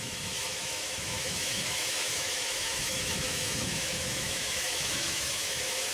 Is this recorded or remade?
remade